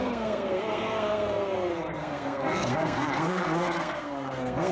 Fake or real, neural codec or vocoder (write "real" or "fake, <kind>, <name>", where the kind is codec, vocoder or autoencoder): fake, codec, SNAC